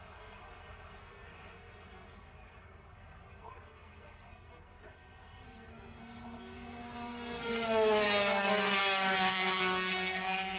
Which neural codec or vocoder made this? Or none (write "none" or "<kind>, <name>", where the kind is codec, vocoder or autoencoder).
codec, SNAC